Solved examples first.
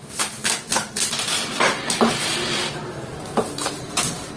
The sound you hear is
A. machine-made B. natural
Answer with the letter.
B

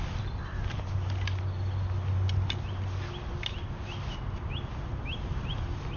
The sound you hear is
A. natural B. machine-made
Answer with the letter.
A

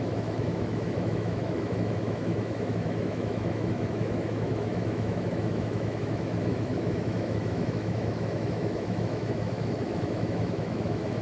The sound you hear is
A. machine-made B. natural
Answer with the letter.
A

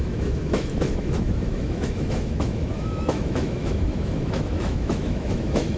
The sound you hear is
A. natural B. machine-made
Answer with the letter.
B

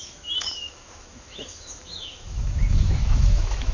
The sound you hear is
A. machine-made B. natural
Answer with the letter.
A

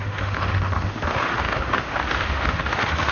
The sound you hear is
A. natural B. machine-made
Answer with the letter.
B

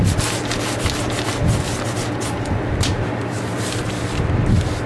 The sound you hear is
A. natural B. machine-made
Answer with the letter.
A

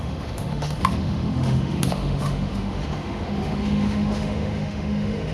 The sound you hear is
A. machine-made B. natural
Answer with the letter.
A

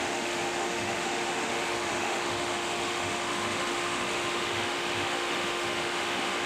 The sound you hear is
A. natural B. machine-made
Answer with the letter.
B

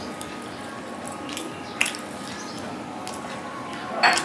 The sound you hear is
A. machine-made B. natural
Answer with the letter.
B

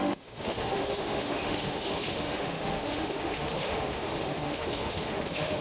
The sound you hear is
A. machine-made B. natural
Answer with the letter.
A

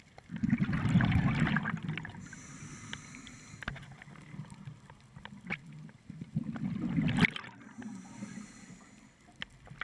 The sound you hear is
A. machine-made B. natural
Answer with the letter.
B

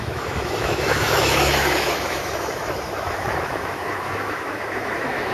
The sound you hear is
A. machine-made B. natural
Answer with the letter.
A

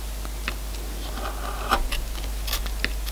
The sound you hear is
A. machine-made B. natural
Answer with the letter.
B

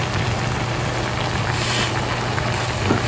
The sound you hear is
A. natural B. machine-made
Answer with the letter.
A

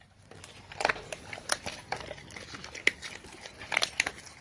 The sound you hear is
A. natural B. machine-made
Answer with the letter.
A